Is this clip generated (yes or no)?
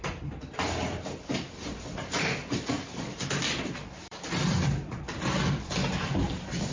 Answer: yes